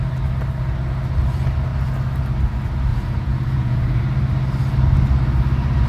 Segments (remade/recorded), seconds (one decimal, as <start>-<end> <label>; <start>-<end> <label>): 0.0-2.9 recorded; 2.9-4.0 remade; 4.0-5.9 recorded